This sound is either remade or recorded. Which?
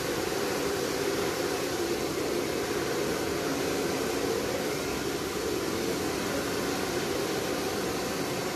remade